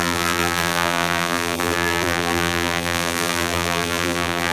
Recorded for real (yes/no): no